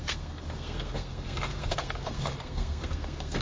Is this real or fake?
fake